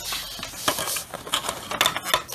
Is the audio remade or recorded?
recorded